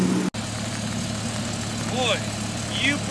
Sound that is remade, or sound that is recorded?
recorded